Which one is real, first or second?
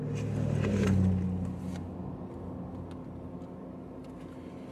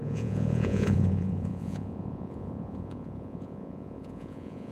first